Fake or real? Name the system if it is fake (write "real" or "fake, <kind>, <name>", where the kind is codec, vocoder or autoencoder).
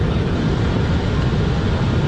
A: fake, vocoder, BigVGAN v2